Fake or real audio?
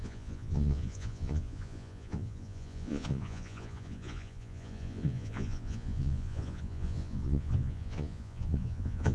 fake